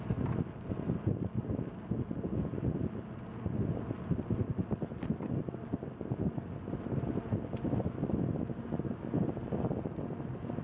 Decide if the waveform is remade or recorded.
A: recorded